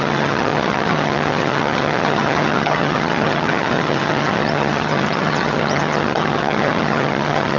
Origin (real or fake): fake